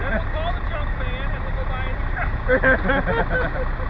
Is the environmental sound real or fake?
real